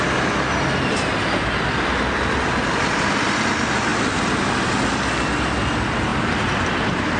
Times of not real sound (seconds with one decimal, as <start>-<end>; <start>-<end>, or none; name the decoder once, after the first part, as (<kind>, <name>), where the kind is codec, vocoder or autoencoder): none